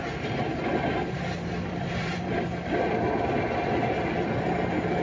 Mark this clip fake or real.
fake